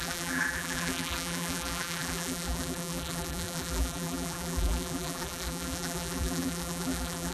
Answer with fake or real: fake